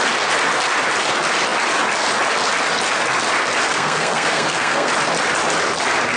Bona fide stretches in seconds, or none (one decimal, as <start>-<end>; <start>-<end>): 0.0-3.7; 4.9-6.2